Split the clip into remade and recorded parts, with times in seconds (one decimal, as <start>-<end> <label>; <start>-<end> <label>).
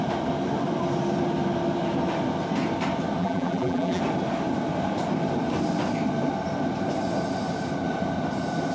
0.0-3.2 recorded; 3.2-4.0 remade; 4.0-8.7 recorded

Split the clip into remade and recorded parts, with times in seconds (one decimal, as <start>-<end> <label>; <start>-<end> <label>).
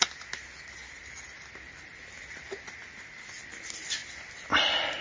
0.0-5.0 recorded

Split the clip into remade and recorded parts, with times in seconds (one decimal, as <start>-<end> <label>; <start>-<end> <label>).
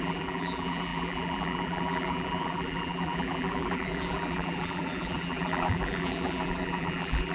0.0-7.3 remade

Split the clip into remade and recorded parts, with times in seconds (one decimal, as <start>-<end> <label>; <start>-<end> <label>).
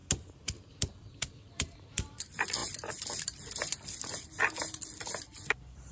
0.0-0.8 recorded; 0.8-5.9 remade